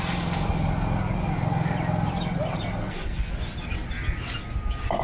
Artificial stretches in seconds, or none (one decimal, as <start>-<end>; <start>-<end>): 2.8-3.3

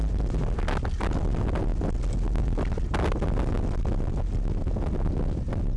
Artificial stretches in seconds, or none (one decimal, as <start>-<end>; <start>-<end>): none

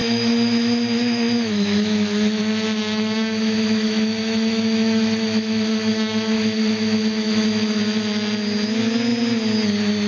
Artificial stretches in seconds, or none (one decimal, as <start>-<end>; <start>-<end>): 0.0-2.4; 2.8-7.8

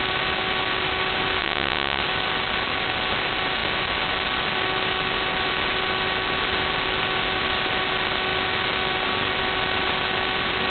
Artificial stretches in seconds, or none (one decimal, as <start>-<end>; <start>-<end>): 1.4-2.0